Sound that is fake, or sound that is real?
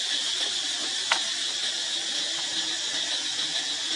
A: real